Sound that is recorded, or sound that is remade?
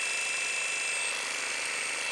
recorded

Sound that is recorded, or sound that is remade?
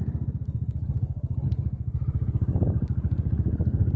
remade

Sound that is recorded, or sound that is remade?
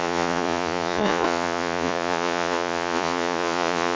remade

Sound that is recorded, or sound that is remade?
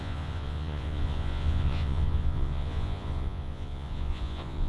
remade